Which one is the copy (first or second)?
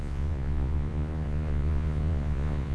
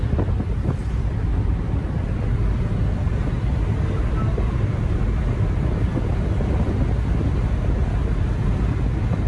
first